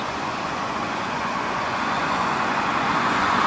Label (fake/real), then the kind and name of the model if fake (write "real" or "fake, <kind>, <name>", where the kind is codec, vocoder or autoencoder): fake, vocoder, Vocos